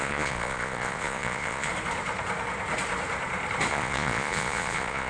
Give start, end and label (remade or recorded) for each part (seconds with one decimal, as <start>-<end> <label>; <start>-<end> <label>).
0.0-1.7 remade; 1.7-3.7 recorded; 3.7-5.1 remade